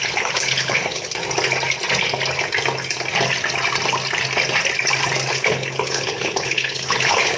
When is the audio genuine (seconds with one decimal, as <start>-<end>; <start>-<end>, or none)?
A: 1.2-5.3